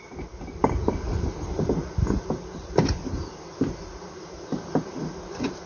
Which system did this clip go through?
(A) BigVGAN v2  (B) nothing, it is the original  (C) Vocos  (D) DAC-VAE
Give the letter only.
B